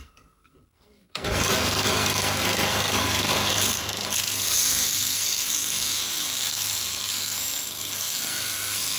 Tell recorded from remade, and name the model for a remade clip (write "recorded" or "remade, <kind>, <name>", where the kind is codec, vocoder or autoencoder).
remade, codec, SNAC